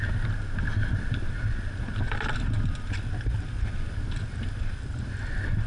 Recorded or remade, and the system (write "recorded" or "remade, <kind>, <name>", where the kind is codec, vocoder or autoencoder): recorded